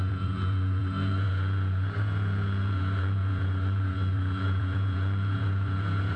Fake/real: fake